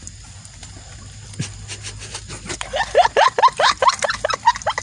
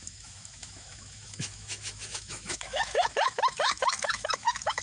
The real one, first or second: first